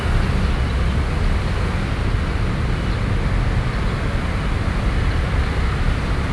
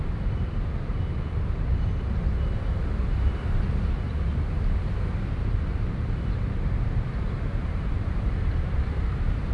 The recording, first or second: first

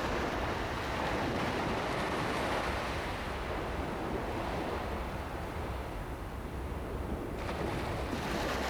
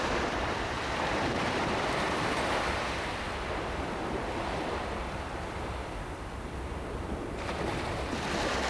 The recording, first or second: first